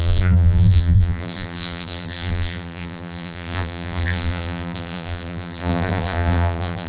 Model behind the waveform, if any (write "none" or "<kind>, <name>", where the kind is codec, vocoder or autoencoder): vocoder, BigVGAN v2